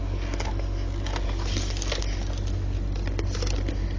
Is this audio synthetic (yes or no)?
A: no